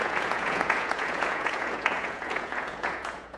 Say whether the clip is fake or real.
fake